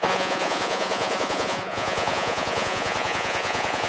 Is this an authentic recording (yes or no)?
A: no